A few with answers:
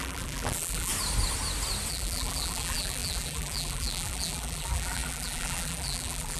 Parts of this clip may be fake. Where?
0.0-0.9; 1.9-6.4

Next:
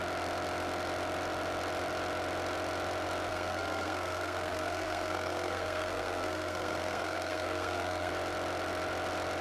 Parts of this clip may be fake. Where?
3.3-8.1

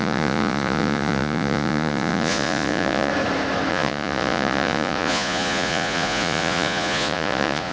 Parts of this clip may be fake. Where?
0.0-3.1; 3.7-7.7

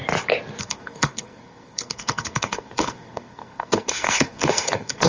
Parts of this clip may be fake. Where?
0.6-5.1

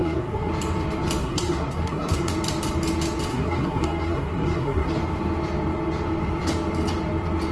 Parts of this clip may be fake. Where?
0.0-0.5; 1.2-2.3; 3.3-4.9

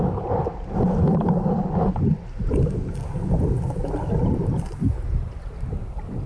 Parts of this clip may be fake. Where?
none